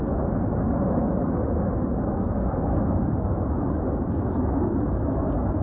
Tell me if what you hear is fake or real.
real